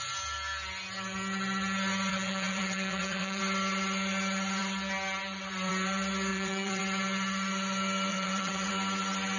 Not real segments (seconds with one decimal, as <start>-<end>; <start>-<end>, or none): 2.1-3.4; 6.3-6.8; 8.1-8.7